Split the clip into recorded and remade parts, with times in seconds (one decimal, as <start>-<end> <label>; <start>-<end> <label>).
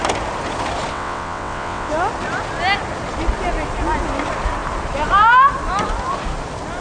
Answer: 0.0-0.9 recorded; 0.9-1.9 remade; 1.9-6.8 recorded